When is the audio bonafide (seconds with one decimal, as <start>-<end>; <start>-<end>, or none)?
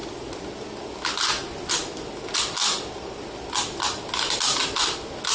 0.0-5.3